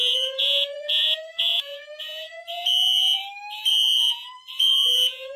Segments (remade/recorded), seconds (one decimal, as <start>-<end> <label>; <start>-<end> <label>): 0.0-3.2 remade; 3.2-3.7 recorded; 3.7-5.4 remade